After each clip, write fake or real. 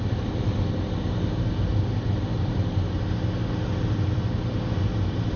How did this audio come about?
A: real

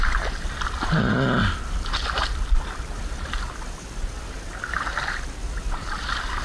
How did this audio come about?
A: real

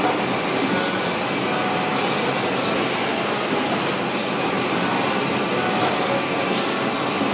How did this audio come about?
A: real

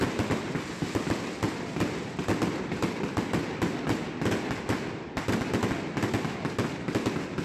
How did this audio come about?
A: real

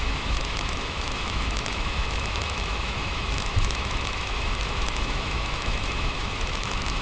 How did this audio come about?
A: fake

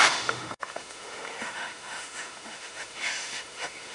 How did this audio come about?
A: fake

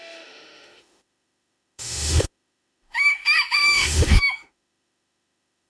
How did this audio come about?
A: fake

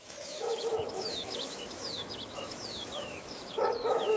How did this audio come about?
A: fake